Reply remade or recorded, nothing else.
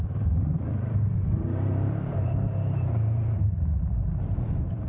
remade